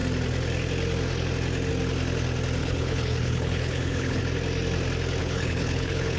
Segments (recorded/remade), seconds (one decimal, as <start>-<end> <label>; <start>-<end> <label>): 0.0-2.6 recorded; 2.6-4.2 remade; 4.2-5.2 recorded; 5.2-6.2 remade